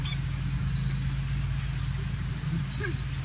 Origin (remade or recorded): recorded